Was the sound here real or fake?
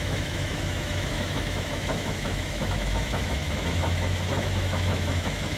fake